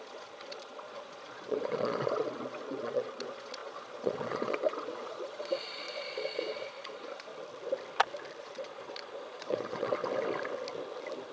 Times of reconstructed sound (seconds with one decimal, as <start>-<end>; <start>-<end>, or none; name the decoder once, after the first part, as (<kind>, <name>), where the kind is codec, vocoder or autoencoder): 0.0-7.3 (vocoder, Vocos); 8.4-10.0